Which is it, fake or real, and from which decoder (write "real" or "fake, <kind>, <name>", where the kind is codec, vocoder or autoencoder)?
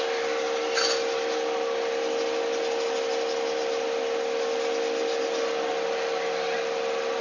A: real